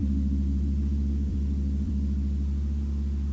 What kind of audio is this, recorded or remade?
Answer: remade